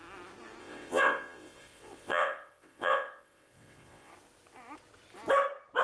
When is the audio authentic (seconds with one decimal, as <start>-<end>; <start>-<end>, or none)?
0.0-0.6; 4.1-5.8